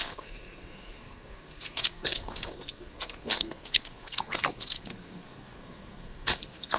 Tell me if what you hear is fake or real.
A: fake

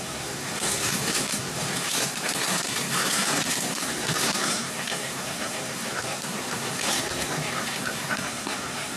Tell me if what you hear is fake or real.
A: fake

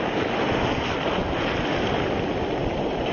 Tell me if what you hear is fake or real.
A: real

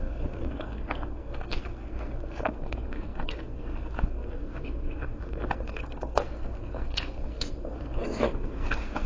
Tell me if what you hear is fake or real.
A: fake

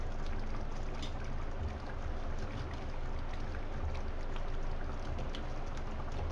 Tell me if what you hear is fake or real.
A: real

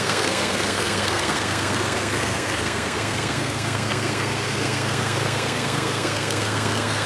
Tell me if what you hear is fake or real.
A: fake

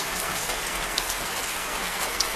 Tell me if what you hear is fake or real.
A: fake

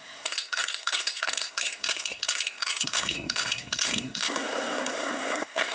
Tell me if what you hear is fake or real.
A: fake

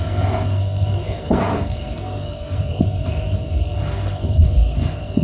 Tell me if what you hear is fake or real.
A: fake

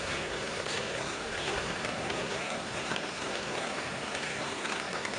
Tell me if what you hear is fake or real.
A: fake